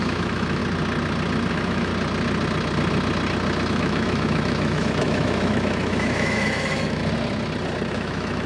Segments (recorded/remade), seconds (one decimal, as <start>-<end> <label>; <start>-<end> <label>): 0.0-0.6 remade; 0.6-1.5 recorded; 1.5-1.9 remade; 1.9-3.7 recorded; 3.7-7.0 remade; 7.0-7.9 recorded; 7.9-8.5 remade